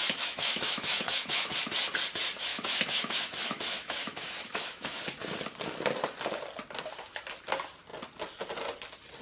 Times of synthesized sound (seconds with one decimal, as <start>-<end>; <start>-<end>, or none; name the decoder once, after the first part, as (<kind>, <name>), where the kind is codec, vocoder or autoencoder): 0.0-1.5 (autoencoder, DAC-VAE); 2.5-5.0